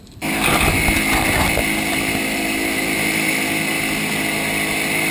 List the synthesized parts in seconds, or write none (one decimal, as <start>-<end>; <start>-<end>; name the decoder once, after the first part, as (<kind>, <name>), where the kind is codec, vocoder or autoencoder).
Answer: none